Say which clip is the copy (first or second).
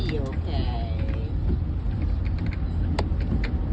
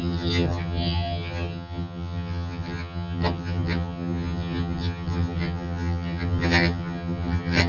second